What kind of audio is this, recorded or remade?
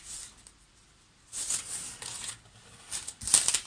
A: recorded